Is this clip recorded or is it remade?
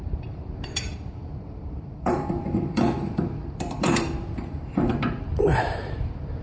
remade